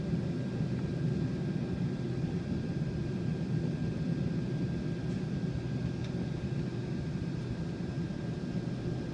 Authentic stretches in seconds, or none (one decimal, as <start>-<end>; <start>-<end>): 0.0-9.1